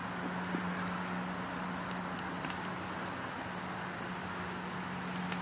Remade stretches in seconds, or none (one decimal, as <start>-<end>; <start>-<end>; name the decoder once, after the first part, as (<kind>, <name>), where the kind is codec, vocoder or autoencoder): none